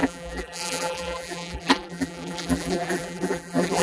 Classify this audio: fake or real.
fake